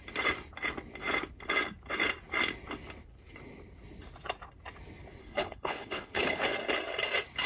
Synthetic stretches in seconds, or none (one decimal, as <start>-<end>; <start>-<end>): 5.2-6.4